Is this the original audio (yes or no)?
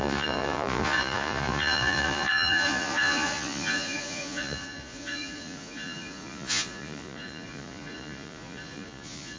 no